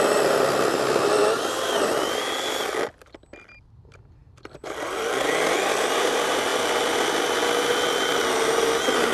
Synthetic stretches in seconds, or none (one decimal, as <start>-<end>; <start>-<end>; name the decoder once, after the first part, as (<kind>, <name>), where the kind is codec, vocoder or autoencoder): none